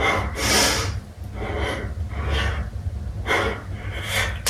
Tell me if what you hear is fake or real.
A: real